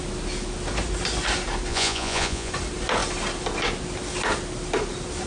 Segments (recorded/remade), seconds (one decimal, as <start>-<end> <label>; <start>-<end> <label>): 0.0-1.7 recorded; 1.7-2.5 remade; 2.5-5.3 recorded

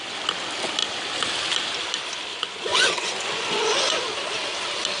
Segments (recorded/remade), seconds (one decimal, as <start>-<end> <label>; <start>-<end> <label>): 0.0-2.3 recorded; 2.3-4.0 remade; 4.0-5.0 recorded

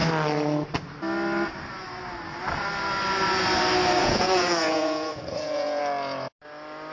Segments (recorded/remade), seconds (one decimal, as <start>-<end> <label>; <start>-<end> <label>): 0.0-4.0 recorded; 4.0-5.8 remade; 5.8-6.9 recorded

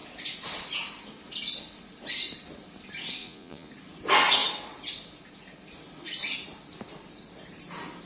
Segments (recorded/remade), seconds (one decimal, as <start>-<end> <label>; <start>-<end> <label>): 0.0-3.2 recorded; 3.2-3.7 remade; 3.7-8.1 recorded

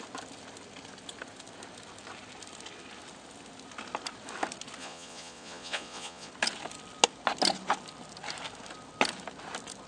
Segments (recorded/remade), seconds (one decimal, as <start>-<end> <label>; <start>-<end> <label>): 0.0-4.8 recorded; 4.8-6.3 remade; 6.3-9.9 recorded

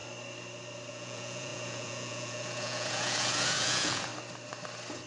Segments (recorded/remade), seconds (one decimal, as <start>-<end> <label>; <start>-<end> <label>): 0.0-0.9 recorded; 0.9-4.1 remade; 4.1-5.1 recorded

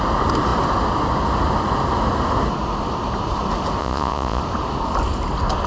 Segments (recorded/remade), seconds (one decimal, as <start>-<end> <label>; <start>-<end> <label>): 0.0-3.8 recorded; 3.8-4.4 remade; 4.4-5.7 recorded